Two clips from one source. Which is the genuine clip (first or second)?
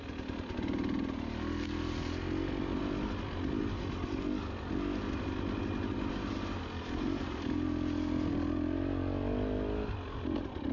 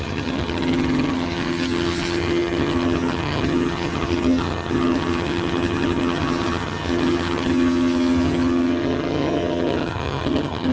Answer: first